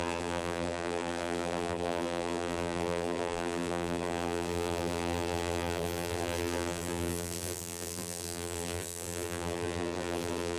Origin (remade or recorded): remade